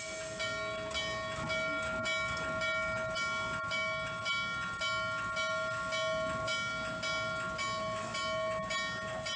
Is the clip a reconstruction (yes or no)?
no